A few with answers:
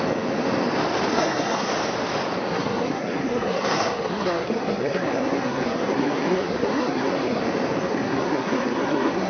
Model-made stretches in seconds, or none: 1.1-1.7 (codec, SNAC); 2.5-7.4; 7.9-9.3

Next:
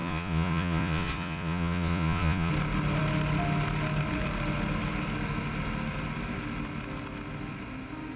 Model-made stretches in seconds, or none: 0.0-2.5 (vocoder, Vocos)

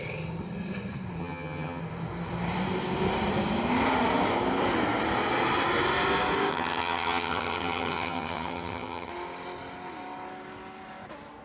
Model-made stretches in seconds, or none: 1.2-1.8 (vocoder, HiFi-GAN); 6.5-9.1

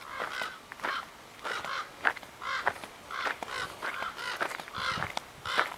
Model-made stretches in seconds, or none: none

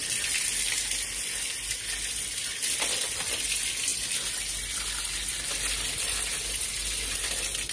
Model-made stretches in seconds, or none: none

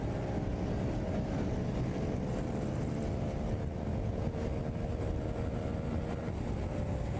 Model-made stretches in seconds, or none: 3.9-4.4 (vocoder, Vocos)

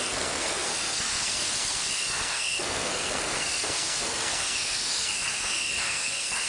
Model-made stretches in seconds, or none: 0.0-6.5 (codec, SNAC)